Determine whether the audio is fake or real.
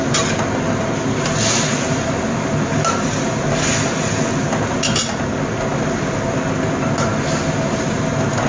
real